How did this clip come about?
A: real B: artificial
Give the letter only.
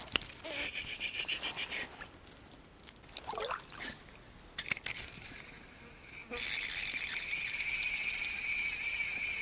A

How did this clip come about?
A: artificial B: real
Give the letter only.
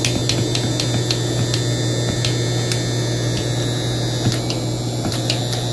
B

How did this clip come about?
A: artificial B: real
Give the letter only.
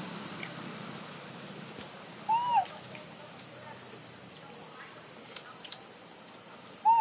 B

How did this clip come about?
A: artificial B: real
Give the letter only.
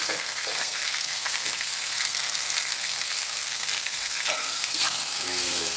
A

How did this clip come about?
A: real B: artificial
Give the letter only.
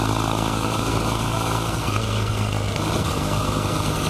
B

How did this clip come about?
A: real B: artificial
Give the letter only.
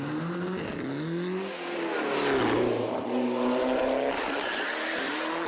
A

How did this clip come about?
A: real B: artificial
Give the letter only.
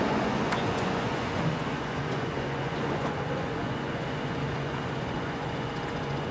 B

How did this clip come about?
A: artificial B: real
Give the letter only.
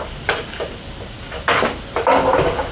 B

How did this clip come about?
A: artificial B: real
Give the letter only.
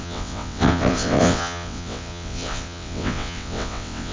A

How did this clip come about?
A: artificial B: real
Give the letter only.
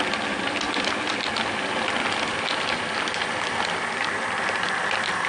B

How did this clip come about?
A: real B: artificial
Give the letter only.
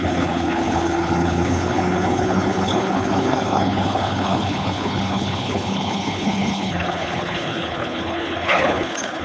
B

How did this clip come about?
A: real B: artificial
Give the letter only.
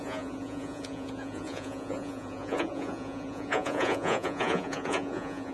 B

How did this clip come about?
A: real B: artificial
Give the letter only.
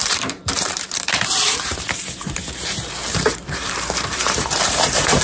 B